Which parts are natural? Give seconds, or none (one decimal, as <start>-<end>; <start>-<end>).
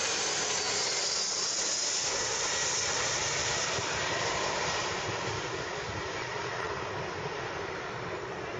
0.0-6.2; 6.7-8.6